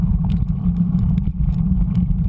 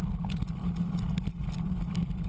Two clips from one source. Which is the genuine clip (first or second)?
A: second